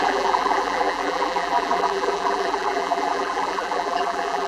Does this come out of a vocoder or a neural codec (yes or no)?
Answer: yes